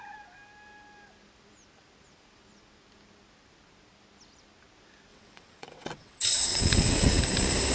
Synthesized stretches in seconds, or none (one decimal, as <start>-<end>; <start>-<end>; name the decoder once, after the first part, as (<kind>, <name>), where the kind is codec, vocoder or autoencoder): 5.1-7.2 (vocoder, WaveNeXt)